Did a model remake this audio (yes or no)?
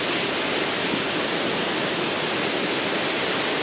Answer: no